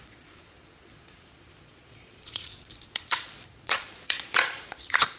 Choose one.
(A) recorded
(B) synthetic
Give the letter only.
B